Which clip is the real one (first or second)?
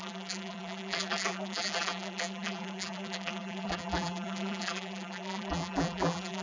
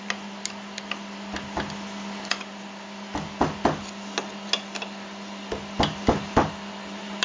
second